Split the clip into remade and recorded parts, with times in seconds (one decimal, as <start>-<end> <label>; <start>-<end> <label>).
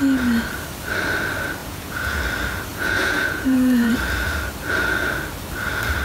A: 0.0-1.6 recorded; 1.6-2.2 remade; 2.2-2.7 recorded; 2.7-3.9 remade; 3.9-6.0 recorded